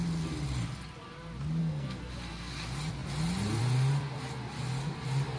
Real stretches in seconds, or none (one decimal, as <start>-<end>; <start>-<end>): 0.0-1.6; 2.1-5.4